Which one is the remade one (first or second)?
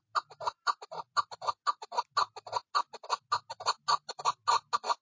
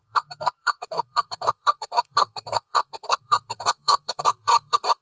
second